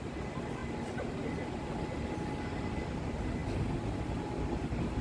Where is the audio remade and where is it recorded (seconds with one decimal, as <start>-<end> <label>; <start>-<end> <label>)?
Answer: 0.0-5.0 recorded

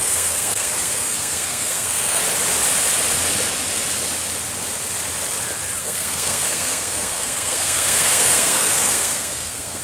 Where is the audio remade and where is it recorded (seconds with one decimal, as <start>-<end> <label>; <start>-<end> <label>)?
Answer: 0.0-2.2 remade; 2.2-5.8 recorded; 5.8-9.8 remade

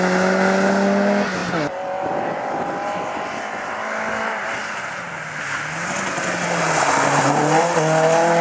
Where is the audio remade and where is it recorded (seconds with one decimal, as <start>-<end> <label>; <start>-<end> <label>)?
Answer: 0.0-8.4 recorded

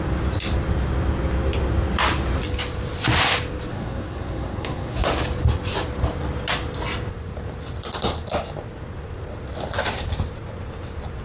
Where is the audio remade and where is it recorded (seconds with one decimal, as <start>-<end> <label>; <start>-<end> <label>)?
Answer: 0.0-3.7 recorded; 3.7-5.0 remade; 5.0-11.2 recorded

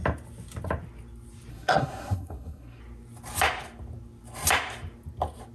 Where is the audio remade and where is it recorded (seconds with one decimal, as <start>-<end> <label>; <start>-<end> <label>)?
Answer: 0.0-1.5 recorded; 1.5-2.8 remade; 2.8-5.5 recorded